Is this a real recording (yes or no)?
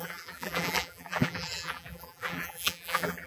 no